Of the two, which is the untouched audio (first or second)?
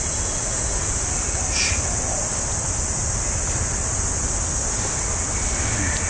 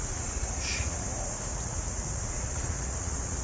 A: first